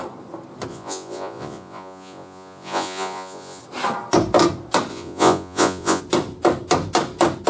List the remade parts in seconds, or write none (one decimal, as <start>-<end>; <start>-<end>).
0.7-3.6; 4.9-6.0